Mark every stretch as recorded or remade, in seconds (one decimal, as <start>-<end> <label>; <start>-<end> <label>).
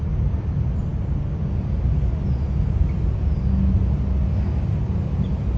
0.0-5.6 recorded